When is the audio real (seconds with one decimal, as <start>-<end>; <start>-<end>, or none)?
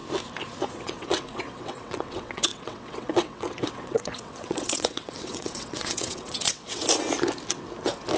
0.0-0.7; 6.8-8.2